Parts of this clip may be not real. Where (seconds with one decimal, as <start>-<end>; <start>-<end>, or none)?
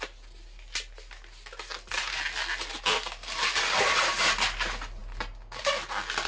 none